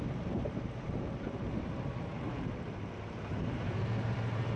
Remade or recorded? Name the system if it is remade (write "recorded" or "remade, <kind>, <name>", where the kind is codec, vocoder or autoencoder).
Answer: remade, vocoder, BigVGAN v2